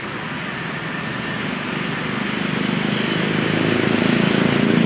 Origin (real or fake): real